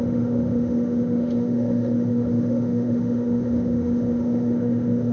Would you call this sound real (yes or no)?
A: no